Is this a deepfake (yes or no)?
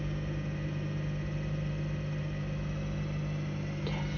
no